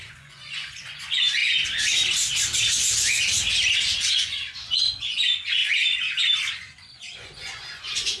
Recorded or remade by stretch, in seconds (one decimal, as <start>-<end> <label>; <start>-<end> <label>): 0.0-1.4 remade; 1.4-4.2 recorded; 4.2-5.6 remade; 5.6-6.5 recorded; 6.5-8.2 remade